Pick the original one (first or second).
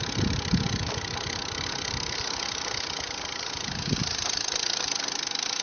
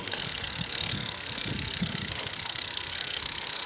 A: first